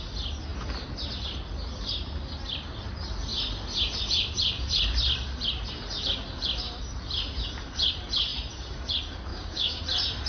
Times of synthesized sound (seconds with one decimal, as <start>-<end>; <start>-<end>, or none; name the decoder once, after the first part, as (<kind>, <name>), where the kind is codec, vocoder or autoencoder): 9.3-9.8 (codec, DAC)